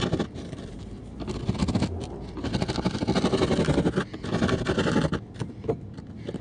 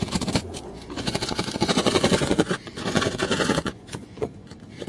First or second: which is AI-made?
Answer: second